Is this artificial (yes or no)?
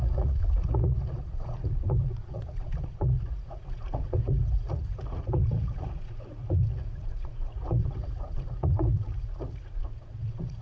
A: yes